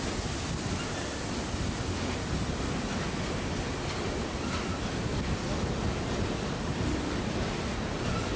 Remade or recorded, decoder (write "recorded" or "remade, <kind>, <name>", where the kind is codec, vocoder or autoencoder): recorded